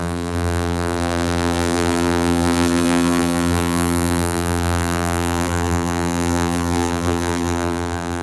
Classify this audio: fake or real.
fake